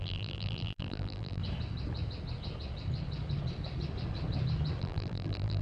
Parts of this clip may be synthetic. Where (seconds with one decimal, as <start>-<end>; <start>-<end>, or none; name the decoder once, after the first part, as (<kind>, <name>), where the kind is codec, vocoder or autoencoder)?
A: 0.0-1.4 (vocoder, BigVGAN v2); 4.8-5.6